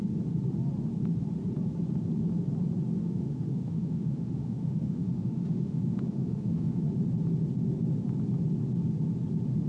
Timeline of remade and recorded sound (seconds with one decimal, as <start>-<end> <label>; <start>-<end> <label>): 0.0-3.0 recorded; 3.0-6.8 remade; 6.8-9.7 recorded